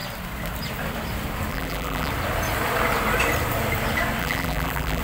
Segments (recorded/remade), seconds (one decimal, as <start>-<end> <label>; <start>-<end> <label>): 0.0-1.5 recorded; 1.5-2.1 remade; 2.1-4.2 recorded; 4.2-5.0 remade